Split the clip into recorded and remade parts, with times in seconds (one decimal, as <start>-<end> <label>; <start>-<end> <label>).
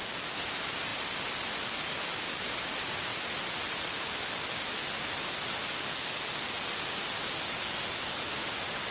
0.0-3.1 recorded; 3.1-4.0 remade; 4.0-8.9 recorded